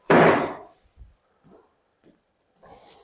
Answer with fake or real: fake